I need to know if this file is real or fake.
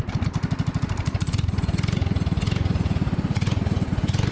real